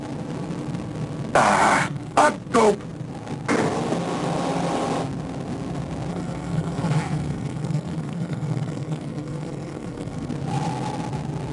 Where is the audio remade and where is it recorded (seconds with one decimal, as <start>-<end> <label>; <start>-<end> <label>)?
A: 0.0-1.8 recorded; 1.8-2.3 remade; 2.3-6.1 recorded; 6.1-10.3 remade; 10.3-11.5 recorded